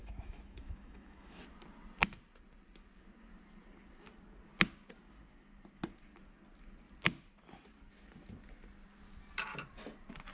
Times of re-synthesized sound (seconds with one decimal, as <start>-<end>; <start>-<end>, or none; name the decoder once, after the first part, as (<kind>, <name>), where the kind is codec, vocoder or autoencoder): 0.0-1.4 (autoencoder, DAC-VAE)